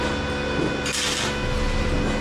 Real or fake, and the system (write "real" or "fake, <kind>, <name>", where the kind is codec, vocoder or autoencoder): real